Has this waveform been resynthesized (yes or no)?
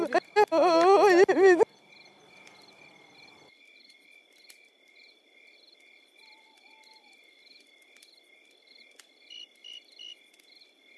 no